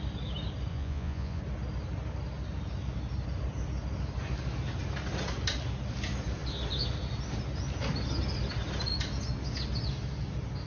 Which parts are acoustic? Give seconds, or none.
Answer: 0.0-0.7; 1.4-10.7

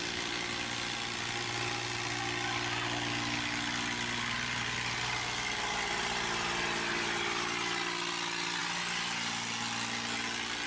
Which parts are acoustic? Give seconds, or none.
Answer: 0.0-10.7